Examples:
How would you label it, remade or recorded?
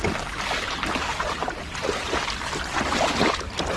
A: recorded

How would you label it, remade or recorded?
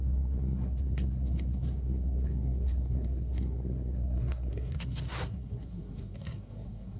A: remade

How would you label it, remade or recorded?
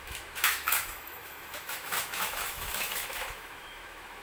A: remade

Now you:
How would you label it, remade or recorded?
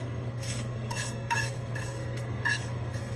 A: remade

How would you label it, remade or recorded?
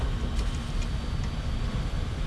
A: recorded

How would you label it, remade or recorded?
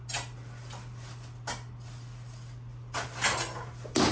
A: recorded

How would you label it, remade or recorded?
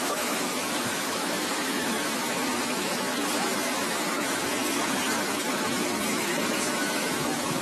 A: remade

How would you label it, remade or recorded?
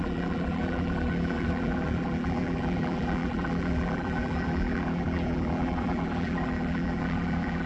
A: remade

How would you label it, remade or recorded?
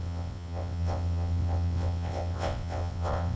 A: remade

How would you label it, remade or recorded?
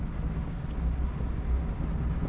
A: recorded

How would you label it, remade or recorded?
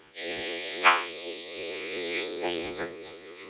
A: remade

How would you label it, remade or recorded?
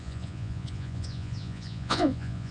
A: remade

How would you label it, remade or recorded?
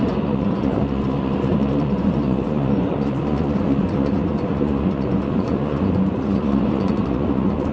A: remade